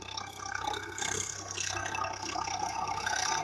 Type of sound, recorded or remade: remade